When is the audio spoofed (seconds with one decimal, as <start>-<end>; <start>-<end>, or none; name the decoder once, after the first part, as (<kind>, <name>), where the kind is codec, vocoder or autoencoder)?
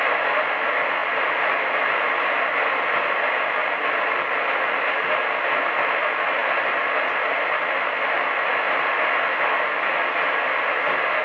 1.0-2.2 (vocoder, BigVGAN v2); 3.6-5.0